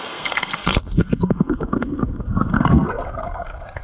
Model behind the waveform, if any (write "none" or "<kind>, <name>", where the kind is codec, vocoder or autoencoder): codec, SNAC